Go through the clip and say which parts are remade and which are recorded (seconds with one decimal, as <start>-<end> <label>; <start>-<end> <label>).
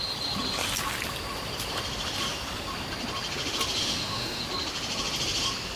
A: 0.0-3.8 recorded; 3.8-4.4 remade; 4.4-5.8 recorded